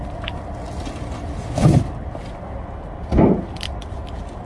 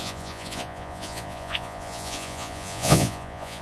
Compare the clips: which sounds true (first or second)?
first